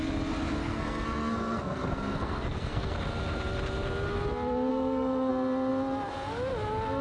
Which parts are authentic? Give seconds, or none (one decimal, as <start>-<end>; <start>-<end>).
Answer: 0.0-0.6; 3.0-4.7; 5.3-7.0